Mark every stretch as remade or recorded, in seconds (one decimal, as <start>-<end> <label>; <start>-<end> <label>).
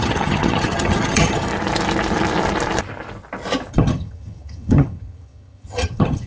0.0-1.5 remade; 1.5-3.7 recorded; 3.7-6.3 remade